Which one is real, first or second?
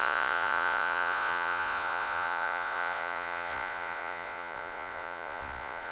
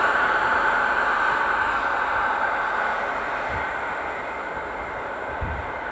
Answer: second